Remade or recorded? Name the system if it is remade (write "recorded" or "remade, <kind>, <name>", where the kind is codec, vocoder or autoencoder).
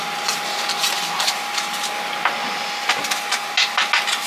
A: recorded